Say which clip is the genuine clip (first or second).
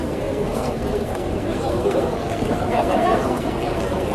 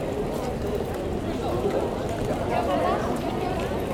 second